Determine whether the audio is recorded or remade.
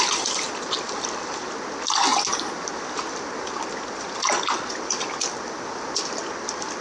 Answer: recorded